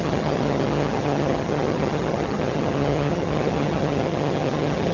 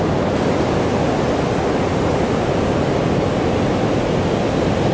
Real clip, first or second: second